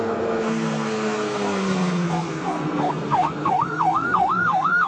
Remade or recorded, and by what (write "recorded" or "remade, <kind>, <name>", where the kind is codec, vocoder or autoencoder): remade, codec, SNAC